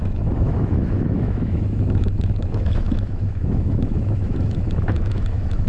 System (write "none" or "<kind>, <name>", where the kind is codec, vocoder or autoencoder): autoencoder, DAC-VAE